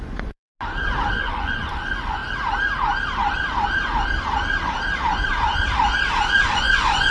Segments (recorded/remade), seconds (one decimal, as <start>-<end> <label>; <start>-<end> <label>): 0.0-0.5 remade; 0.5-1.1 recorded; 1.1-2.2 remade; 2.2-6.5 recorded; 6.5-7.1 remade